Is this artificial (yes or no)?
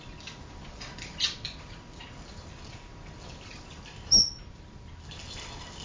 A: no